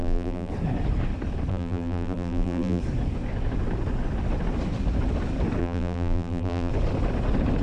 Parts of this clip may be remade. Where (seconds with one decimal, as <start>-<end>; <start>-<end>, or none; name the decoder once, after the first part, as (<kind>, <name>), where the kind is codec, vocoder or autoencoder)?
0.0-0.5 (vocoder, BigVGAN v2); 1.5-2.8; 5.6-6.7